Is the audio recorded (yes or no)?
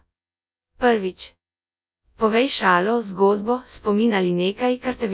no